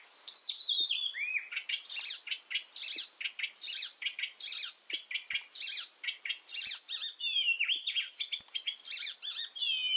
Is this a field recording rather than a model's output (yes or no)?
yes